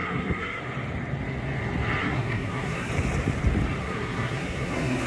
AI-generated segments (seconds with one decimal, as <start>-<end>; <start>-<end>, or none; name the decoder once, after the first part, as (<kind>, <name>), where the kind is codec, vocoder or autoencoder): 0.0-0.6 (codec, SNAC); 2.0-2.9; 3.8-5.1